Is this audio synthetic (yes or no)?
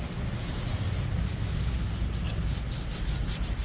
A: no